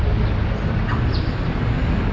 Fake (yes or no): yes